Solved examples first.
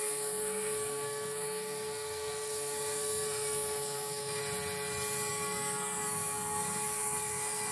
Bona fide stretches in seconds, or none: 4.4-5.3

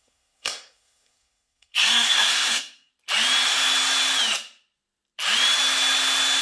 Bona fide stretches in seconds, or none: 2.9-6.4

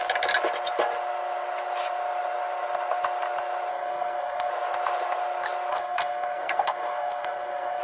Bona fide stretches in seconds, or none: 0.0-3.7; 4.5-5.7

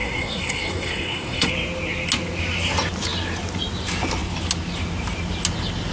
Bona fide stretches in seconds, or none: 1.5-5.9

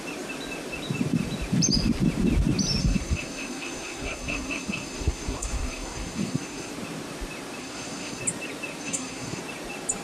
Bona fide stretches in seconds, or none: 0.0-2.8; 6.7-7.6; 8.2-8.8; 9.4-10.0